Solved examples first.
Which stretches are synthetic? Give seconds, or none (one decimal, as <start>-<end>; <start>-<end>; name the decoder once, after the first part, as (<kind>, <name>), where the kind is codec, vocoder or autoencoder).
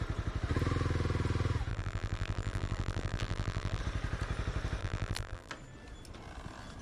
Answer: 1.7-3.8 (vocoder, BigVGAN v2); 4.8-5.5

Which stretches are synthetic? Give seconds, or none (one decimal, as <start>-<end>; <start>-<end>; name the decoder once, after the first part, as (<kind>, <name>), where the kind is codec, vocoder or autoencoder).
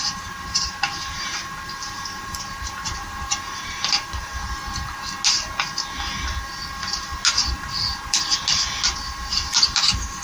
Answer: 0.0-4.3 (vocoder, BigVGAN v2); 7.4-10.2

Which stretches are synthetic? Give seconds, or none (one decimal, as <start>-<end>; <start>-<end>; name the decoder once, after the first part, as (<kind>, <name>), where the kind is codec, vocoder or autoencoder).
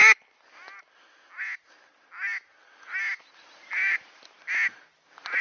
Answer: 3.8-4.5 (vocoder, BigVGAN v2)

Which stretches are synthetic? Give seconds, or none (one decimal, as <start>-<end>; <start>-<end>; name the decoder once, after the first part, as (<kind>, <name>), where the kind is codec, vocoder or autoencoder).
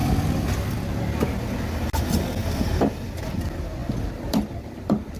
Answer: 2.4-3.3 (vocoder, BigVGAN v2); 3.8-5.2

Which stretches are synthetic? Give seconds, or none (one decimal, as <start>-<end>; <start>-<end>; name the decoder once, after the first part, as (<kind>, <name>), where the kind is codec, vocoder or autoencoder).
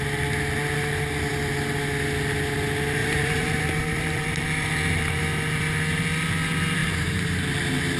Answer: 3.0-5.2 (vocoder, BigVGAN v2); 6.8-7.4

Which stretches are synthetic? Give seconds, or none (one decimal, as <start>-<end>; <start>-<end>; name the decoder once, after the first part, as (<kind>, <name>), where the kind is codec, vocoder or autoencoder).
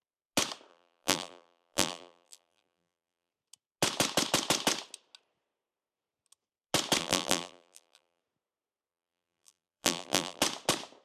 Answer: 0.7-3.3 (vocoder, BigVGAN v2); 7.0-8.2; 8.9-10.4